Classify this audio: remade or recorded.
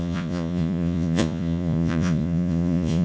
remade